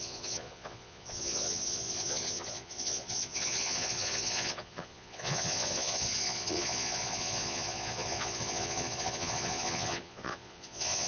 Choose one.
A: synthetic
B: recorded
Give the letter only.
A